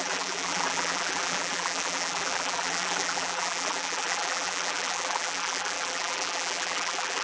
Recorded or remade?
remade